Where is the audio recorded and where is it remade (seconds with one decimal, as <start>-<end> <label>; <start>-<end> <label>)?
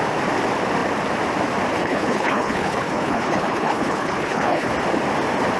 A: 0.0-1.8 recorded; 1.8-4.7 remade; 4.7-5.6 recorded